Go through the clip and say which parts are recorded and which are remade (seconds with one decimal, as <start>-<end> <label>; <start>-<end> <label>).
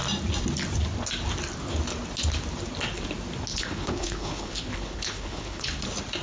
0.0-3.5 recorded; 3.5-5.8 remade; 5.8-6.2 recorded